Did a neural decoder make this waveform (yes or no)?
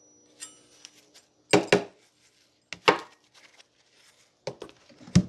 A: no